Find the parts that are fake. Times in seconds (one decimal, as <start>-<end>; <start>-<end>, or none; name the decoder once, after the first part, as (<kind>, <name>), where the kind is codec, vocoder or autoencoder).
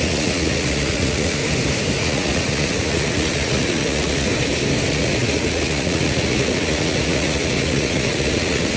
0.0-1.4 (vocoder, Vocos); 2.0-4.3; 4.9-8.8